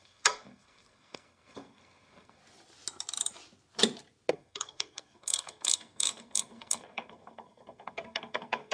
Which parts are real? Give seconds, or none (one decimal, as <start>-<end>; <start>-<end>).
2.4-4.3